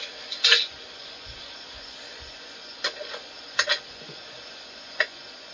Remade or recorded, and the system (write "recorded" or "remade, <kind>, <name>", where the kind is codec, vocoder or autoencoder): remade, vocoder, Vocos